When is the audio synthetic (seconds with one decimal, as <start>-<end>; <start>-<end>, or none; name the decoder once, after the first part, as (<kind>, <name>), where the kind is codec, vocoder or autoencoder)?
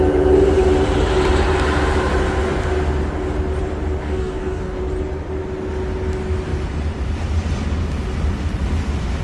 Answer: 4.0-4.8 (codec, DAC)